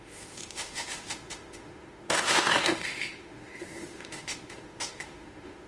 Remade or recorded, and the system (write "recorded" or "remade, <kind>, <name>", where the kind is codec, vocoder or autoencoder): remade, autoencoder, DAC-VAE